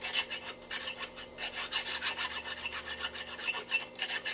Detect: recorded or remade recorded